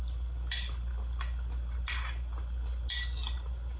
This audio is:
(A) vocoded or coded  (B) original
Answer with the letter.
B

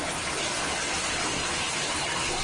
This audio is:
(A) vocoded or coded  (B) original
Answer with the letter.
B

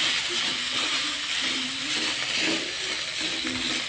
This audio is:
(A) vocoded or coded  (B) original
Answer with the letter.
B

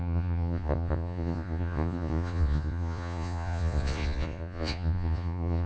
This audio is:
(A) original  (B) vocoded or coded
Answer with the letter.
B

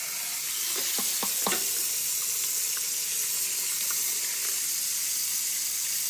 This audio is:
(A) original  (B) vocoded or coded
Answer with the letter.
A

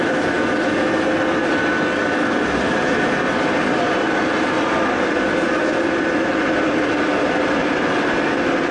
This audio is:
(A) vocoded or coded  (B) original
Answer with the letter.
B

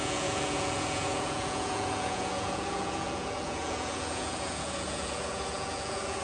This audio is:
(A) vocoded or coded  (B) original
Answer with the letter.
A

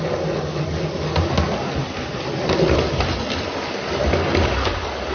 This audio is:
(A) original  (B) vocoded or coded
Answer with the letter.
A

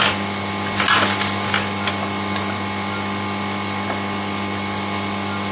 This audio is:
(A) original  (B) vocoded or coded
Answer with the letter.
A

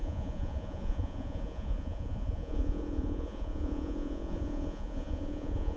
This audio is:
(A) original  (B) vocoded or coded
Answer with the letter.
B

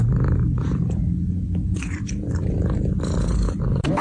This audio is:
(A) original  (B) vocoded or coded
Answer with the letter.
B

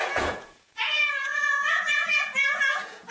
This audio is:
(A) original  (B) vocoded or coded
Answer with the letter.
B